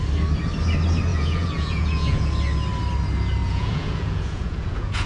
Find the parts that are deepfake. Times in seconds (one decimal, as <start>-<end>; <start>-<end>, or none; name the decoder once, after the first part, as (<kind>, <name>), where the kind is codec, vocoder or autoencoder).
1.1-2.3 (vocoder, Vocos); 3.4-5.1